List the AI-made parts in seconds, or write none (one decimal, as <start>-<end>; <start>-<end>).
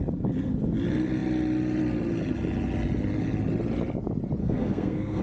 4.4-5.2